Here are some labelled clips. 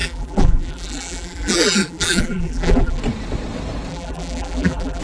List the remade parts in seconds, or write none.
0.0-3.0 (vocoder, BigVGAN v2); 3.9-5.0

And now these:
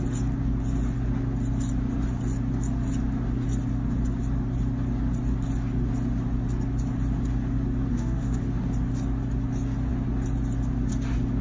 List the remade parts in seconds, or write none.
7.9-8.4 (autoencoder, DAC-VAE)

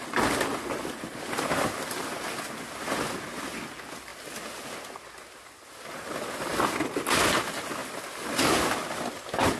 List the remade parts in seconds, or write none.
none

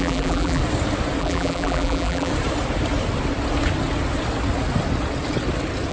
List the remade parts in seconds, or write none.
0.0-0.6 (vocoder, BigVGAN v2); 1.2-2.3